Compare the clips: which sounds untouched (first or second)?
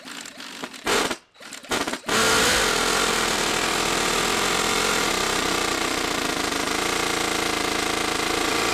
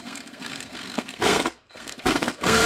first